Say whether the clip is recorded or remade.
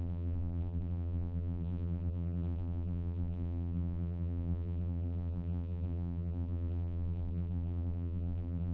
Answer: remade